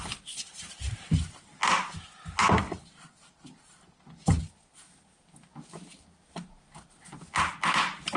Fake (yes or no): no